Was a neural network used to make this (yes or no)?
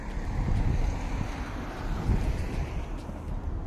no